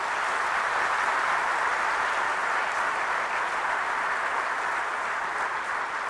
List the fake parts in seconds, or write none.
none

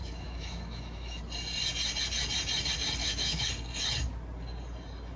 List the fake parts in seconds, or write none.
0.0-1.2 (autoencoder, DAC-VAE); 3.0-3.5

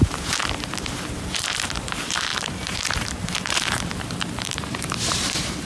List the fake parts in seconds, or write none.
0.0-5.7 (vocoder, BigVGAN v2)